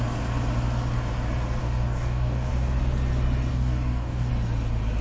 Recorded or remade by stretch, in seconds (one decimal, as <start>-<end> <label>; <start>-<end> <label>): 0.0-1.6 recorded; 1.6-2.5 remade; 2.5-3.5 recorded; 3.5-4.3 remade; 4.3-5.0 recorded